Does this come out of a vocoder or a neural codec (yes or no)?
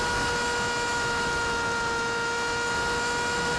no